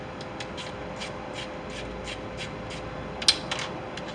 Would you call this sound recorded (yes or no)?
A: yes